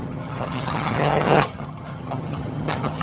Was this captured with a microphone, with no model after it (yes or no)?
no